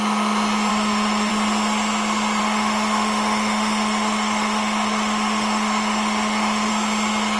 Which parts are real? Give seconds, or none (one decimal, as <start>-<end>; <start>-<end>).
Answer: 0.0-0.7; 1.3-2.4; 6.7-7.4